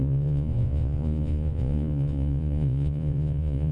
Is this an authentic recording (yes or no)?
no